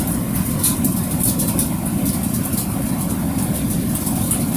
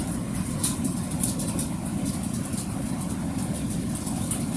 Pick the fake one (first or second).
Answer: second